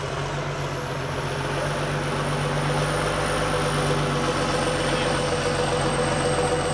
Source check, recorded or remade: recorded